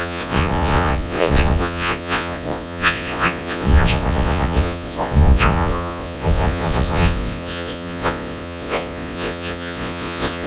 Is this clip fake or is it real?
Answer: fake